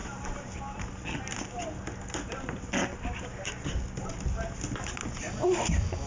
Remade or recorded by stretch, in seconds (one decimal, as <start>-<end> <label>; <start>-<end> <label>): 0.0-6.1 recorded